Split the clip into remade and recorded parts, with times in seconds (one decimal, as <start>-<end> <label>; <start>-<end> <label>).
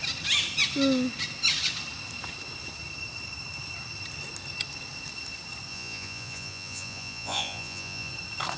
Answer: 0.0-5.7 recorded; 5.7-8.1 remade; 8.1-8.6 recorded